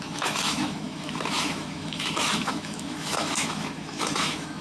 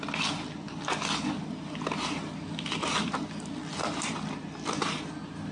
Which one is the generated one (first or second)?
first